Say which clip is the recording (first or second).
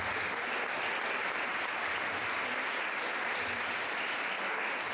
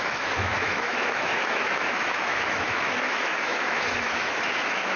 first